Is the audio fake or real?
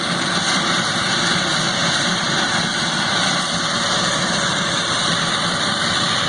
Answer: fake